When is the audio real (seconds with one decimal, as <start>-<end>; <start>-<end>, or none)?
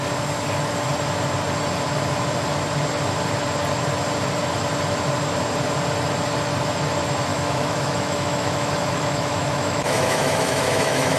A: 0.0-7.3